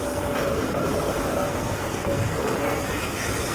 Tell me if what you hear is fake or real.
fake